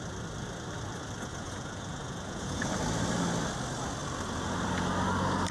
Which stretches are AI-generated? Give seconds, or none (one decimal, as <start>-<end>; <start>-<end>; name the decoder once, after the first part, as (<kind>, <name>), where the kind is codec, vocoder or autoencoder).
1.3-2.7 (vocoder, Vocos)